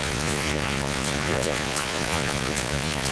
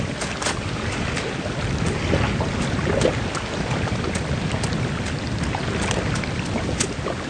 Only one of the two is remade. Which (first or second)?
first